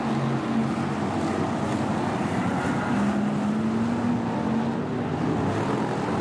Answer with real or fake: real